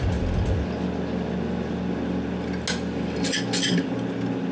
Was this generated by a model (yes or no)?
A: no